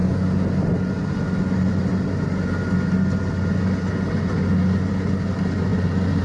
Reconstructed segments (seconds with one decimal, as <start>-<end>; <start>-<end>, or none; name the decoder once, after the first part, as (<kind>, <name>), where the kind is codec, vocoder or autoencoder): none